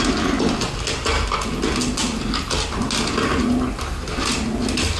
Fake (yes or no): no